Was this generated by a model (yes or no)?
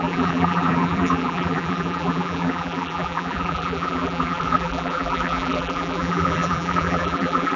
yes